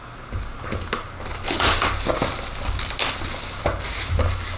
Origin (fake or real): real